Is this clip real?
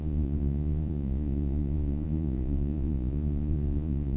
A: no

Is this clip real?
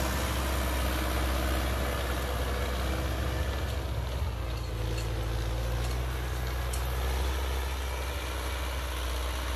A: yes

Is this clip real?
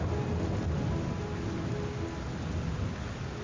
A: yes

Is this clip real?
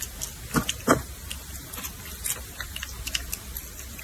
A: yes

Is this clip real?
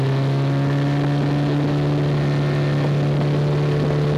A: yes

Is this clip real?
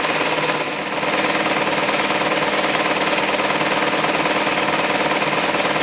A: yes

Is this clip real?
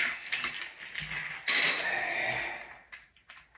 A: yes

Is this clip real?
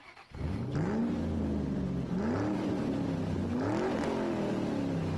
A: yes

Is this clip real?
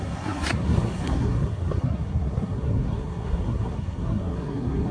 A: no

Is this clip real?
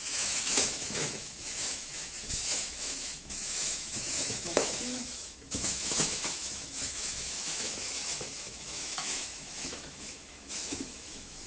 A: no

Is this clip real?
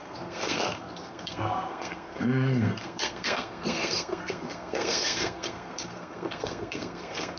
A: no